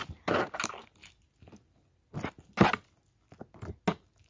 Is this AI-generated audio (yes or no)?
no